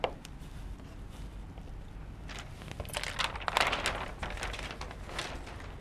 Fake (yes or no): no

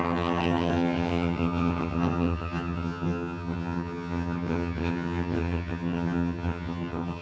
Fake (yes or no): yes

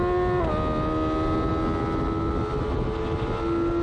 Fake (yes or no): no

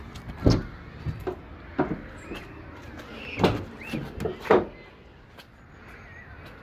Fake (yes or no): no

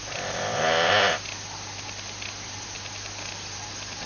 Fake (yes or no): no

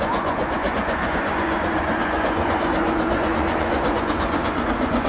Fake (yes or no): yes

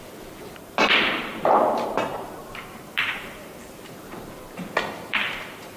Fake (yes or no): yes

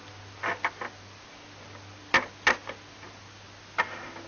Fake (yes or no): no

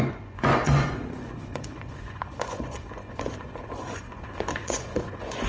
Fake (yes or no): yes